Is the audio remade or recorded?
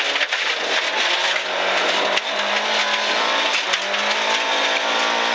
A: recorded